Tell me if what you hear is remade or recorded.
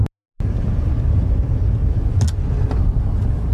recorded